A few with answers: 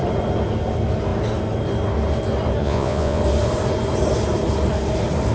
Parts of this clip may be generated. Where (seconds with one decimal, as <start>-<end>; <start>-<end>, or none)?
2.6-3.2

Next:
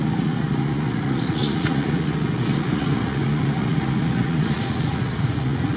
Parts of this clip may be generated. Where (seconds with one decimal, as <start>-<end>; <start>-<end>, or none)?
0.0-5.8

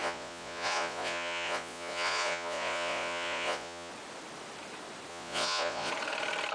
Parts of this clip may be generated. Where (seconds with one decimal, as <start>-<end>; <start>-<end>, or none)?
0.0-3.9; 5.1-5.9

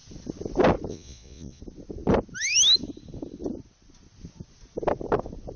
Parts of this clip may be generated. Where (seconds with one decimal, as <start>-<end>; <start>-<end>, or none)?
0.9-1.6

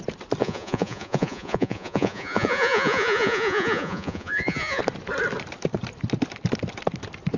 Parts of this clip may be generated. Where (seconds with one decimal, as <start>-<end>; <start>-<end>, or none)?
0.4-4.8

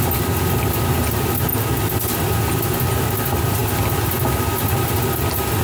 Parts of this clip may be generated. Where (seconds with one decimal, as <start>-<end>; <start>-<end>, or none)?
none

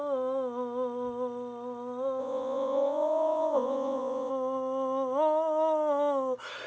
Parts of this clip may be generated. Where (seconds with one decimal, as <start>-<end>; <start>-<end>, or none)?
2.2-4.3

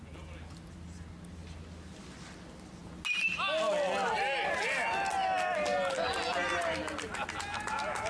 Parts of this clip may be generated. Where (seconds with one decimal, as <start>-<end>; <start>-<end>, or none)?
none